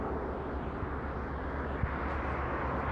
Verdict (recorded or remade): recorded